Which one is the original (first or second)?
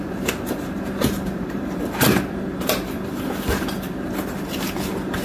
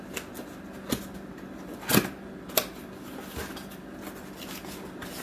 second